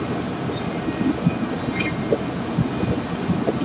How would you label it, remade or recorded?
recorded